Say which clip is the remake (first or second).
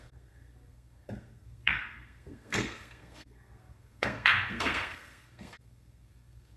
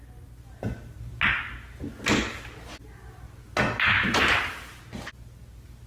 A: first